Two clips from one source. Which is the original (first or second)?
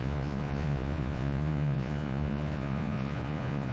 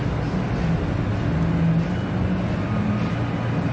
second